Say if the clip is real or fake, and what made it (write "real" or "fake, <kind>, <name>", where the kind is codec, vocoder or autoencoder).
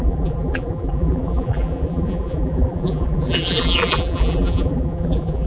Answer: fake, vocoder, BigVGAN v2